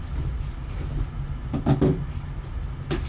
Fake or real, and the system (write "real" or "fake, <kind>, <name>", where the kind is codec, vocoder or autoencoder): real